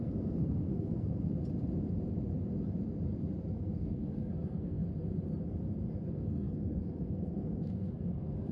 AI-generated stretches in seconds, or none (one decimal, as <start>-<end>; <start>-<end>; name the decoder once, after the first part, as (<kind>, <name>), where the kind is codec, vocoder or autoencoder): 0.0-1.3 (codec, SNAC); 3.5-4.8; 6.1-8.5